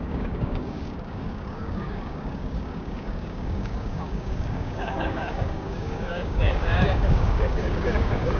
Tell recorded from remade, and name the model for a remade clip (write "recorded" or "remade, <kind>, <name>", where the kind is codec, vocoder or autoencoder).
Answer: remade, codec, DAC